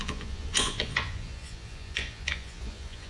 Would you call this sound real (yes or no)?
no